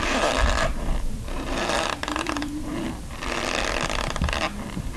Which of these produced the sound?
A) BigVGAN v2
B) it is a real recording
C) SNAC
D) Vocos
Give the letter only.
A